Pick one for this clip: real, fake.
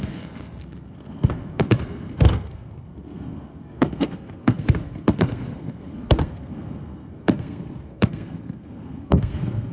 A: fake